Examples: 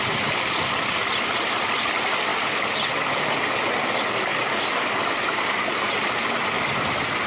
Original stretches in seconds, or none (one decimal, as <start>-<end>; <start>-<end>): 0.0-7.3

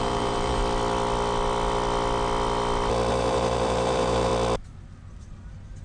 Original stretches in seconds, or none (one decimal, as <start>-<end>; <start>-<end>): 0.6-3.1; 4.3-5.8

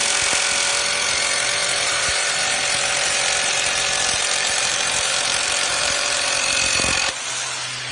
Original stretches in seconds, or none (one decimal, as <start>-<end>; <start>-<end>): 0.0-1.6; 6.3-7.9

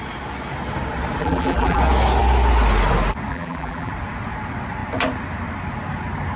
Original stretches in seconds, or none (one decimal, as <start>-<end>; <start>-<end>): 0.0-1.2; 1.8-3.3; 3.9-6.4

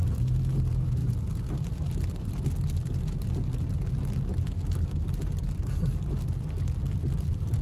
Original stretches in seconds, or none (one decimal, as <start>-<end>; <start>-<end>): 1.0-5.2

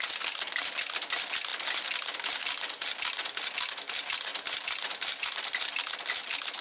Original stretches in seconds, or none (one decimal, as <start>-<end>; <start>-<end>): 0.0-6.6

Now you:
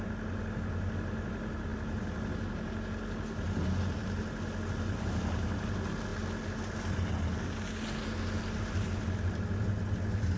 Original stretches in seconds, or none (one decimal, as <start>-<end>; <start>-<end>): 0.0-10.4